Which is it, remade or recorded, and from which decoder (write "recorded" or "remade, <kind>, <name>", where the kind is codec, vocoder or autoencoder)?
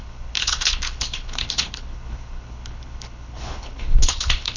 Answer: remade, codec, HILCodec